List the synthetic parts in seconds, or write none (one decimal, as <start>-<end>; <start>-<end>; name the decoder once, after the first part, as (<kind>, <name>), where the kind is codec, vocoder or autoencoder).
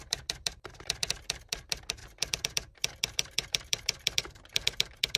0.0-5.2 (vocoder, BigVGAN v2)